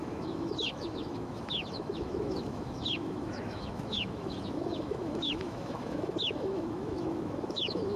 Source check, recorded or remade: remade